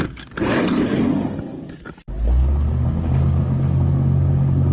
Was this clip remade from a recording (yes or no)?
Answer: no